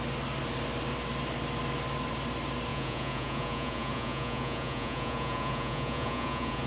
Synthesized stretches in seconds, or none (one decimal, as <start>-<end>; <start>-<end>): 2.7-6.7